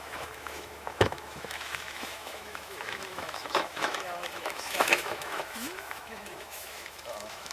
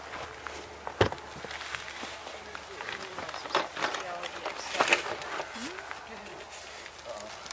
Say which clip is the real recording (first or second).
second